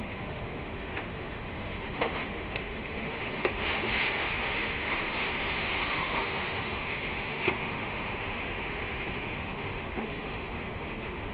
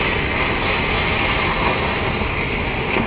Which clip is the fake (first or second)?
first